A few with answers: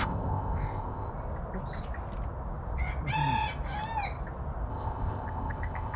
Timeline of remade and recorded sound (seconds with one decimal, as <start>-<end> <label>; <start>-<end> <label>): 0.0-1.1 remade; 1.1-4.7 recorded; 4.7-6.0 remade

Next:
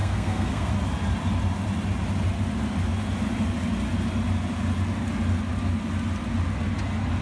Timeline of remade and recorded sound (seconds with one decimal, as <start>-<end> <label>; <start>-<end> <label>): 0.0-0.7 remade; 0.7-7.2 recorded

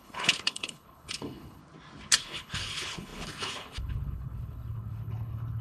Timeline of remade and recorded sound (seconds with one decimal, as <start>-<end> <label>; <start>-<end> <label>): 0.0-1.6 remade; 1.6-2.2 recorded; 2.2-5.6 remade

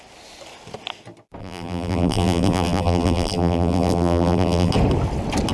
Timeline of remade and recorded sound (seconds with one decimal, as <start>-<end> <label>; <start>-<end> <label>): 0.0-1.4 recorded; 1.4-4.7 remade; 4.7-5.5 recorded

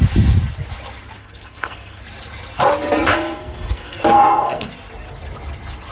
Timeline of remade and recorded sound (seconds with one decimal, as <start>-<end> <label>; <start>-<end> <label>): 0.0-1.2 recorded; 1.2-2.0 remade; 2.0-3.1 recorded; 3.1-4.7 remade; 4.7-5.9 recorded

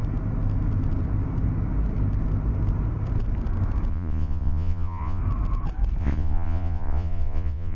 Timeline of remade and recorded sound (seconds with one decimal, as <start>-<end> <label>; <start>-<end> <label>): 0.0-3.9 recorded; 3.9-5.2 remade; 5.2-6.0 recorded; 6.0-7.8 remade